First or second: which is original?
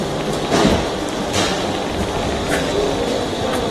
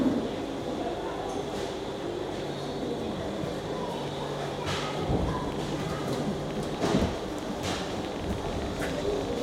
first